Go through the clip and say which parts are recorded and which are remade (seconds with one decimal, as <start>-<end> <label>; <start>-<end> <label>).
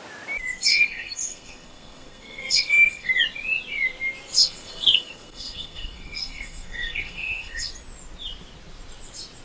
0.0-0.7 recorded; 0.7-3.1 remade; 3.1-4.4 recorded; 4.4-7.7 remade; 7.7-9.4 recorded